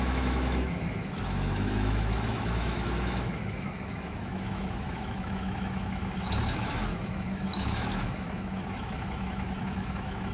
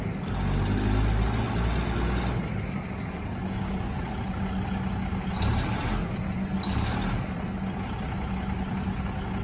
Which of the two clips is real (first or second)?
second